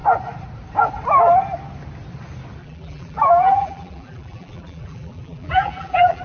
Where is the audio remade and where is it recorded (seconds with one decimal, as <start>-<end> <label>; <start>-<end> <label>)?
0.0-2.6 recorded; 2.6-6.2 remade